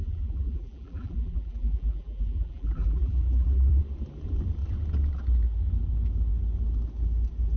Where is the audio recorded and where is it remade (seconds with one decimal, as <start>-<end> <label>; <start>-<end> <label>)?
0.0-3.8 remade; 3.8-7.6 recorded